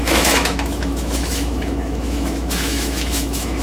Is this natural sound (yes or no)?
no